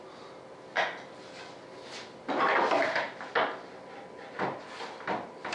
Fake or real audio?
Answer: real